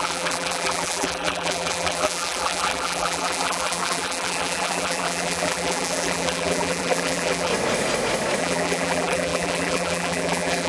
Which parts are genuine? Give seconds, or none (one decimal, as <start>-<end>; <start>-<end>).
7.5-8.4